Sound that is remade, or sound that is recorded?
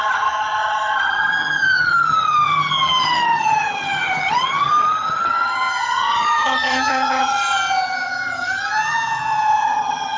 remade